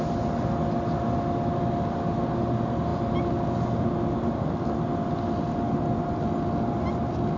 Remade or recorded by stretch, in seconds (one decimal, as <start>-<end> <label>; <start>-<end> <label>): 0.0-7.4 recorded